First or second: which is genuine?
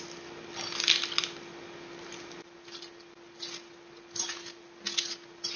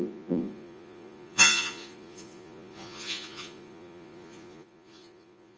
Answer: first